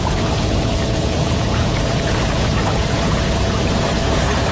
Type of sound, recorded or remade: remade